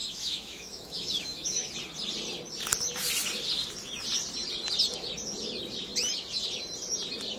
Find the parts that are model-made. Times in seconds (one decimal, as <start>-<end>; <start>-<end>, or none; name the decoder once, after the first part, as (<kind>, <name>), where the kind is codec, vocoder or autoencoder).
0.0-1.7 (autoencoder, DAC-VAE)